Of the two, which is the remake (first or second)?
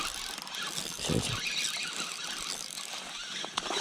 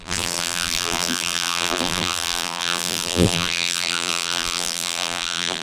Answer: second